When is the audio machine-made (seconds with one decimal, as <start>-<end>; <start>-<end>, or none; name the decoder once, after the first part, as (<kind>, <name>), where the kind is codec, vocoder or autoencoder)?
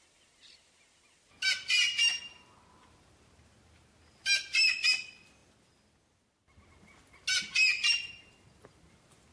none